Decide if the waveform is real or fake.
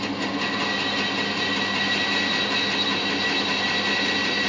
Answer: real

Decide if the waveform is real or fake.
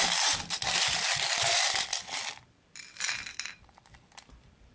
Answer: fake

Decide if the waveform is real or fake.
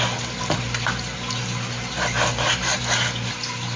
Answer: real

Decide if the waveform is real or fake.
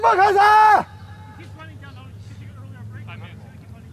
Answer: real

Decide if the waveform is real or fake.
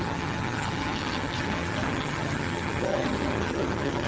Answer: fake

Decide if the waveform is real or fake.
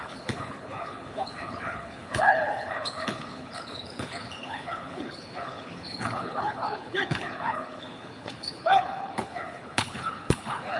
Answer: fake